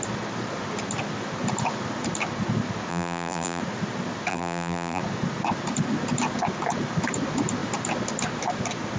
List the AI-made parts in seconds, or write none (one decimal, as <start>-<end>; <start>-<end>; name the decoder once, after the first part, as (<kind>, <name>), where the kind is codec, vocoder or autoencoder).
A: 2.9-3.6 (vocoder, BigVGAN v2); 4.3-5.0